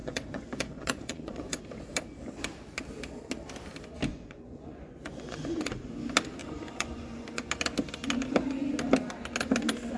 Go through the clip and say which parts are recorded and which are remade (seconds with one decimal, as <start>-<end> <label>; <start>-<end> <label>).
0.0-1.6 remade; 1.6-4.1 recorded; 4.1-5.9 remade; 5.9-6.4 recorded; 6.4-7.5 remade; 7.5-10.0 recorded